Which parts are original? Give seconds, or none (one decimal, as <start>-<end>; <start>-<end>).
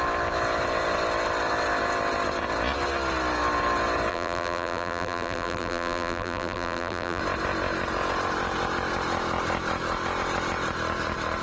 0.0-4.1; 7.2-11.4